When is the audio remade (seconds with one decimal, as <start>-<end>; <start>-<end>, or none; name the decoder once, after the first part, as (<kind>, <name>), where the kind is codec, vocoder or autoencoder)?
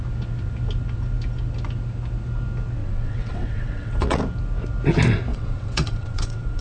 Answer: 2.8-4.2 (vocoder, WaveNeXt); 5.3-6.6